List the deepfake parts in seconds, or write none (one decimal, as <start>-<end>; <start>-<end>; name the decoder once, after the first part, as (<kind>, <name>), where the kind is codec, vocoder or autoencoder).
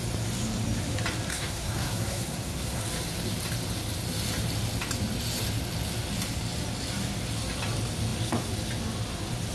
1.3-2.8 (codec, SNAC)